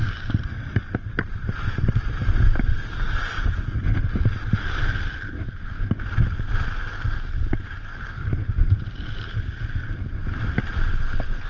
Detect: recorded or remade recorded